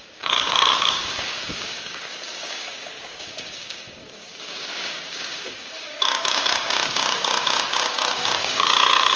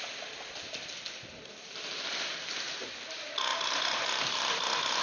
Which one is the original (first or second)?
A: second